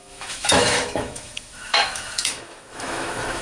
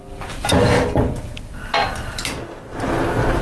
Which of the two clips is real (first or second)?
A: second